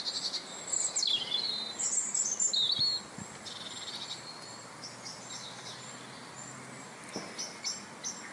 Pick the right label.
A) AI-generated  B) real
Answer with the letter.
B